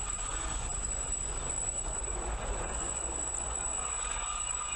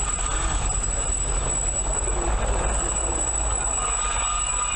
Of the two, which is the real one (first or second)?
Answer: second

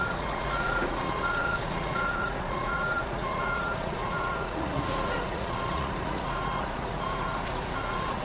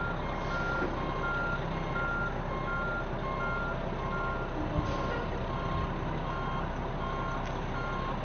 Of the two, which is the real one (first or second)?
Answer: second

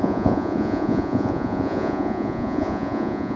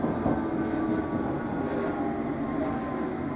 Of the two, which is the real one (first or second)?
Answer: second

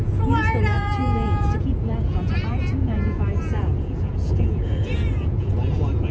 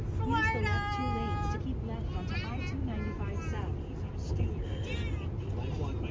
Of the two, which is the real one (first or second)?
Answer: second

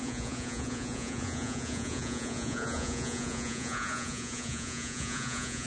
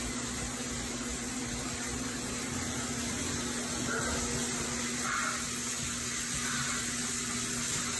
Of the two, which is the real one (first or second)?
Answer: second